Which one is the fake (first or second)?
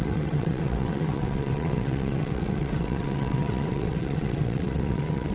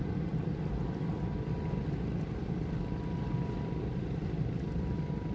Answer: first